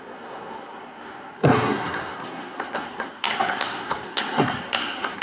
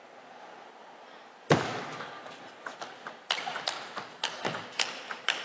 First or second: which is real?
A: second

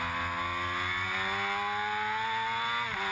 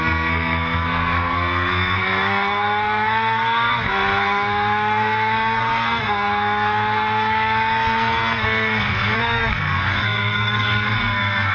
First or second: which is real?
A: first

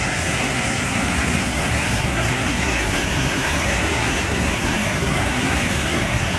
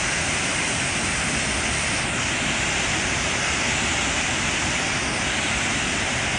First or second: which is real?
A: second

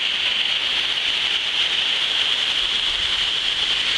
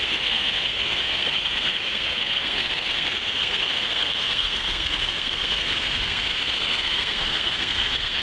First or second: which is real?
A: first